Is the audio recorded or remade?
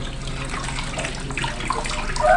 recorded